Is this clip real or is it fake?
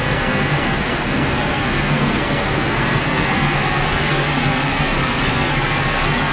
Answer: fake